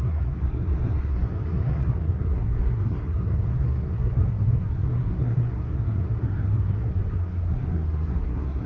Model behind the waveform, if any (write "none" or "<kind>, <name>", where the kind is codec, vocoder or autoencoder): codec, SNAC